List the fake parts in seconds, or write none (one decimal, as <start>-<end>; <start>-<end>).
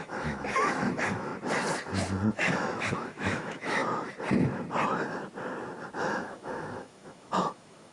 0.0-1.3; 2.3-3.8; 6.0-7.9